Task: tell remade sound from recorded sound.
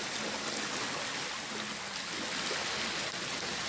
recorded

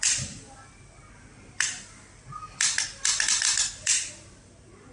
recorded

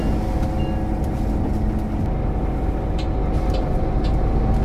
recorded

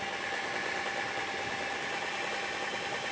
recorded